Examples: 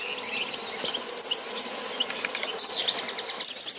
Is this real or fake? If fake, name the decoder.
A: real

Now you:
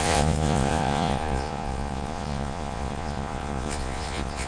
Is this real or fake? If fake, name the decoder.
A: fake, vocoder, Vocos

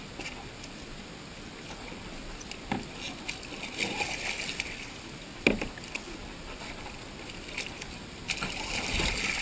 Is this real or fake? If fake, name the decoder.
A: real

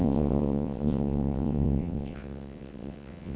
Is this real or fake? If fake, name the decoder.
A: fake, vocoder, WaveNeXt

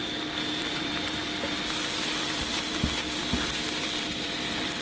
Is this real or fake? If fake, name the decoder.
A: fake, vocoder, BigVGAN v2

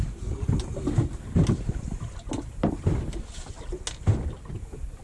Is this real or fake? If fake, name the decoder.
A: real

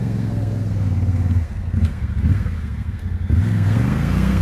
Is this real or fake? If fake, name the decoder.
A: fake, codec, SNAC